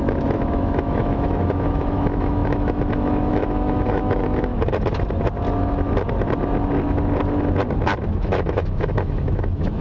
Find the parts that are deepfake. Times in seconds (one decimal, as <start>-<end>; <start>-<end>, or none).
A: 0.0-4.5; 8.1-9.8